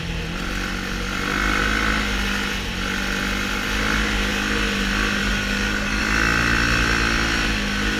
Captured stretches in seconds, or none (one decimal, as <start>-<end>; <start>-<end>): 0.0-5.2; 6.0-8.0